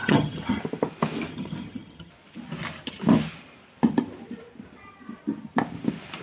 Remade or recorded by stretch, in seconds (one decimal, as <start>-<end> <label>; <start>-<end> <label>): 0.0-0.6 remade; 0.6-1.3 recorded; 1.3-2.1 remade; 2.1-6.2 recorded